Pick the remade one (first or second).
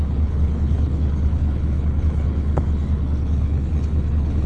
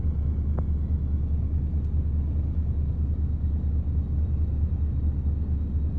first